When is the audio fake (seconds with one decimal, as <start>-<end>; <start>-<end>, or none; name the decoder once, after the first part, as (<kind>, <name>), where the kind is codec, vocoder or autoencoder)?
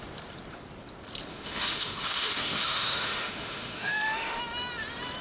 1.3-4.4 (autoencoder, DAC-VAE)